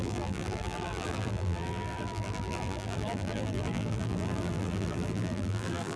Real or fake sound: fake